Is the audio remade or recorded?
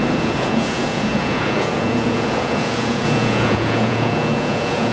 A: remade